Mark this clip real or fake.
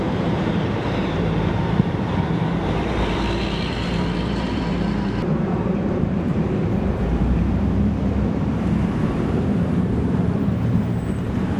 fake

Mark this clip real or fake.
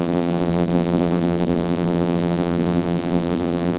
fake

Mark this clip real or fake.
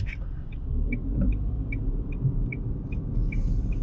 fake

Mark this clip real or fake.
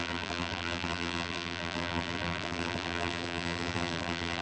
fake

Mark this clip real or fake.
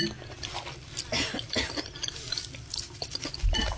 real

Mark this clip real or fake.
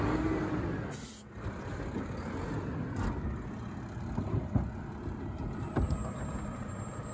real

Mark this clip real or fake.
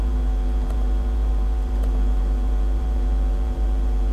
fake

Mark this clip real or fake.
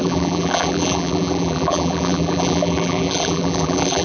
fake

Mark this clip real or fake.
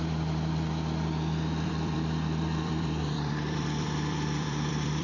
fake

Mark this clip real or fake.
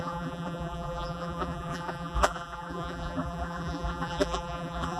fake